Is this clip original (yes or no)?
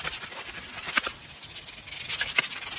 yes